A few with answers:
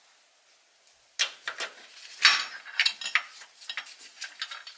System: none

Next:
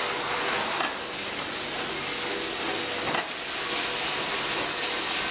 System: none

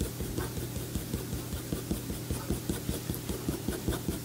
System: none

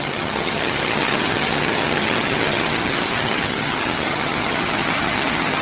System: vocoder, HiFi-GAN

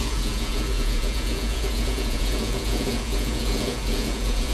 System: vocoder, Vocos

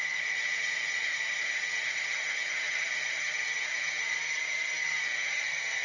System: vocoder, HiFi-GAN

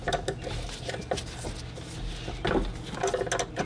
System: none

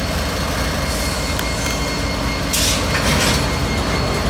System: none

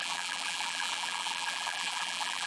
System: vocoder, BigVGAN v2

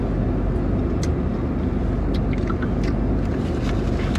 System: none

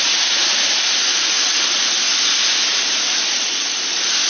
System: none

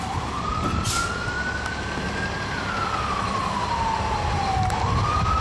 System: none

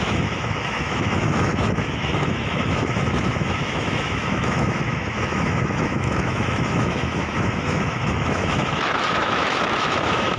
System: autoencoder, DAC-VAE